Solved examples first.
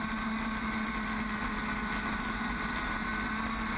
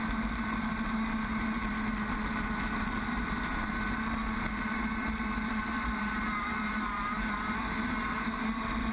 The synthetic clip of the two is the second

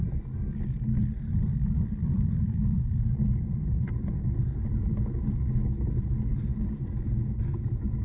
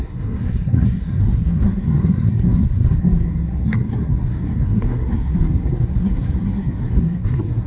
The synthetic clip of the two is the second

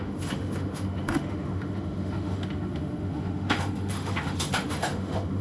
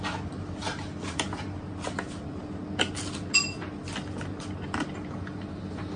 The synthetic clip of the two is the first